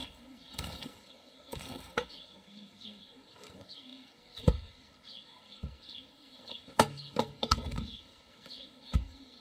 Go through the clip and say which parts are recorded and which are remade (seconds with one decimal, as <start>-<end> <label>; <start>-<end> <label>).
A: 0.0-9.4 remade